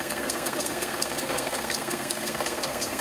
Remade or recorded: remade